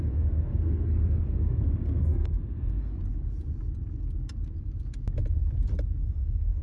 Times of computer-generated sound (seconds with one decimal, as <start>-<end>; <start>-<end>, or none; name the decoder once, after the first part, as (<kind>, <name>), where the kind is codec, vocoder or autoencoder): 0.0-2.9 (codec, SNAC); 6.0-6.6